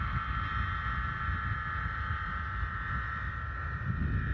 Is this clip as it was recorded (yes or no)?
yes